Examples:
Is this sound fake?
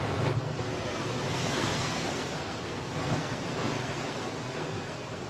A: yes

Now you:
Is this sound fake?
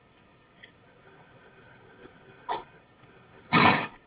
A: yes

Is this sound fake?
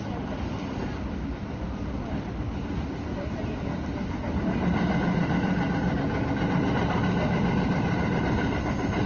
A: yes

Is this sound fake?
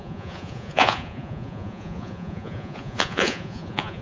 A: yes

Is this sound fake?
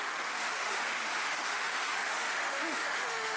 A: yes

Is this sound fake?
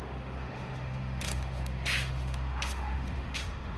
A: yes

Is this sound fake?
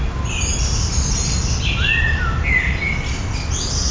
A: no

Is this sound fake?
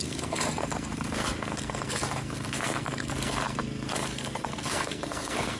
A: yes